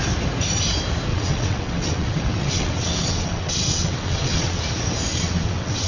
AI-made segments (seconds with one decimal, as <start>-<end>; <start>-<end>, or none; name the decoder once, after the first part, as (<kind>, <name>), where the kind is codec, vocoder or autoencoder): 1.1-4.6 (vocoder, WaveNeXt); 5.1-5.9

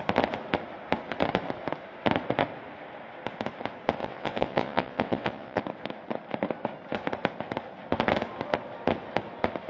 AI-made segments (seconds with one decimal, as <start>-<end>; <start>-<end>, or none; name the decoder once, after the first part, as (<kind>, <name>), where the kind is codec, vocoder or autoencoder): 4.0-5.6 (vocoder, WaveNeXt)

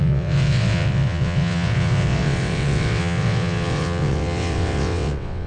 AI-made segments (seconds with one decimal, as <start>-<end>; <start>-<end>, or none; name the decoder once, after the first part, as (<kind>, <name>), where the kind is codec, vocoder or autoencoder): 0.0-5.5 (vocoder, WaveNeXt)

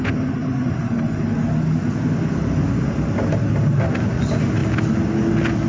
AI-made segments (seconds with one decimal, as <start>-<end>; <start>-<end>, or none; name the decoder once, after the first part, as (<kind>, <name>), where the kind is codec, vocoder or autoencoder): none

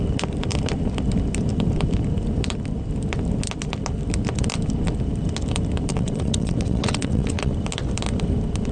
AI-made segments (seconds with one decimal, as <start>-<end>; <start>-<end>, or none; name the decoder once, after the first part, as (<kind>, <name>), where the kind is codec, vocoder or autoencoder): 5.9-7.5 (vocoder, WaveNeXt)

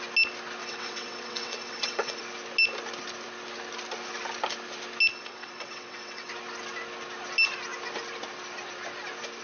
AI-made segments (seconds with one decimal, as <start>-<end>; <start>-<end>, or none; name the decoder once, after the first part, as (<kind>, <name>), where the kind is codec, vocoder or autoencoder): 0.6-2.2 (vocoder, WaveNeXt); 5.1-6.3